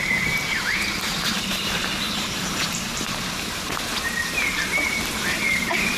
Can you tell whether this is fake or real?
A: fake